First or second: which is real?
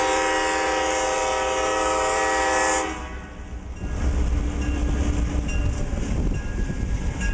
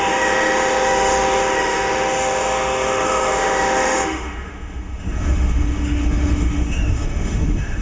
first